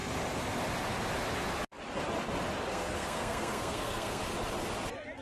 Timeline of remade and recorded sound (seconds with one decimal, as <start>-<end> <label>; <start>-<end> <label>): 0.0-2.7 recorded; 2.7-4.2 remade; 4.2-5.2 recorded